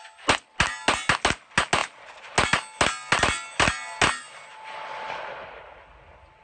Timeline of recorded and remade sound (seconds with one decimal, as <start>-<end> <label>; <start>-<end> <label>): 0.0-6.4 recorded